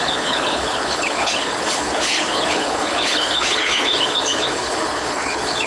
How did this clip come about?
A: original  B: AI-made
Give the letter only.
B